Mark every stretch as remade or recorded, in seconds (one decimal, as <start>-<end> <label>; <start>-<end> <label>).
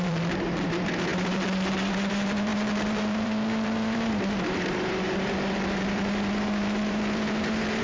0.0-7.8 remade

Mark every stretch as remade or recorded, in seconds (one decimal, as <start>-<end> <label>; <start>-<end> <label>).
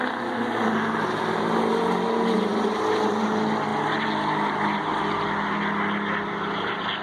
0.0-7.0 recorded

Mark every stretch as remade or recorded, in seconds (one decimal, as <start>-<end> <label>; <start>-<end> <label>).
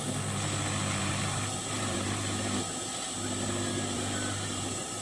0.0-1.0 recorded; 1.0-2.6 remade; 2.6-3.7 recorded; 3.7-5.0 remade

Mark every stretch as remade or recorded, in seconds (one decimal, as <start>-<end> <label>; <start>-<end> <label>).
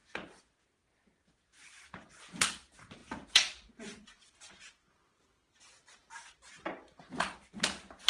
0.0-8.1 recorded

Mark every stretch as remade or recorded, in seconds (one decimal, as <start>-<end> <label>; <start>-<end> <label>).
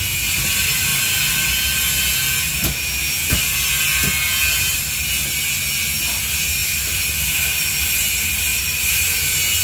0.0-8.5 recorded; 8.5-9.1 remade; 9.1-9.6 recorded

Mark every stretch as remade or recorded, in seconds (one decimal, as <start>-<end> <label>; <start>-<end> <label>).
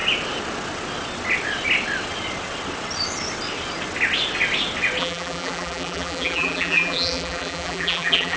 0.0-5.0 recorded; 5.0-8.4 remade